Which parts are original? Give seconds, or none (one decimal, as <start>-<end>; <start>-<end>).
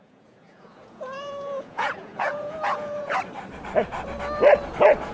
3.1-5.1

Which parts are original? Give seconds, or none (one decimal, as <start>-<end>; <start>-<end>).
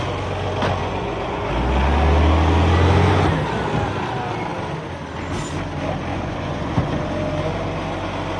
0.0-0.8; 1.5-6.1; 7.1-8.4